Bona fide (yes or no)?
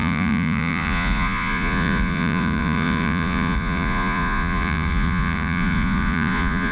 no